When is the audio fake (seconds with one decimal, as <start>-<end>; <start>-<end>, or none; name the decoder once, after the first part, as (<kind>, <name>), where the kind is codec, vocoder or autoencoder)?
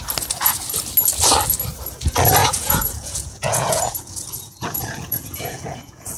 2.4-6.2 (vocoder, Vocos)